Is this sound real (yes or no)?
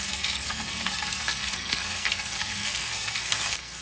no